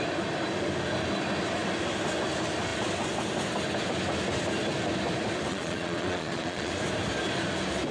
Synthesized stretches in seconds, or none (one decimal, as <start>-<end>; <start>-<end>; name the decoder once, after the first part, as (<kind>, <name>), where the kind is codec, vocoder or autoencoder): 5.5-6.7 (vocoder, Vocos)